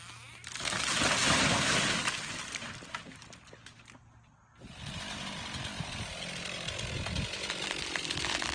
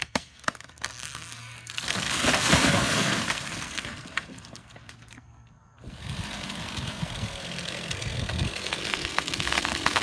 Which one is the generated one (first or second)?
second